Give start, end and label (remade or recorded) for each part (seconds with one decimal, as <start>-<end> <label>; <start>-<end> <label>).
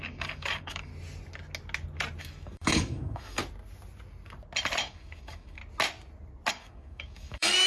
0.0-0.9 remade; 0.9-2.2 recorded; 2.2-3.4 remade; 3.4-4.8 recorded; 4.8-5.6 remade; 5.6-6.5 recorded; 6.5-7.7 remade